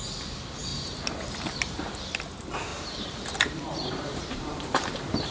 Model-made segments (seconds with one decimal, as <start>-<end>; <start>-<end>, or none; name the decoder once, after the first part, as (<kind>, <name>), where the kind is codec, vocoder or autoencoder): 0.7-1.9 (vocoder, BigVGAN v2); 2.7-5.3

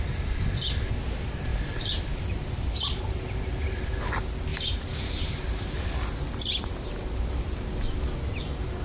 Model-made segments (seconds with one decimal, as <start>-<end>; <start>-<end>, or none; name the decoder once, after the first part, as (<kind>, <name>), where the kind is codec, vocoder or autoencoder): 1.5-2.0 (vocoder, BigVGAN v2); 4.5-5.3